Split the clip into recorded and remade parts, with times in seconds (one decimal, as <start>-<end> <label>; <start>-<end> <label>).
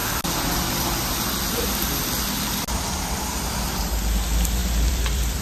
0.0-4.6 recorded; 4.6-5.4 remade